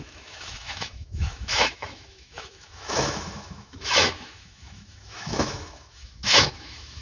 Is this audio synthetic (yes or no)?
yes